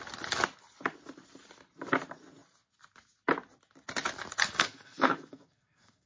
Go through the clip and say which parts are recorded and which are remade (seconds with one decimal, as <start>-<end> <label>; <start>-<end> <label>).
0.0-4.4 recorded; 4.4-6.1 remade